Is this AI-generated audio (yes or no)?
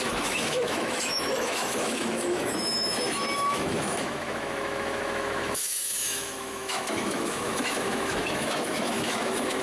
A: yes